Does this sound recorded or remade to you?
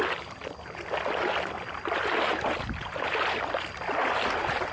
recorded